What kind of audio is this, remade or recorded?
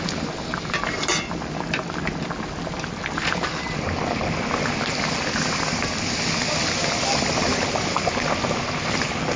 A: recorded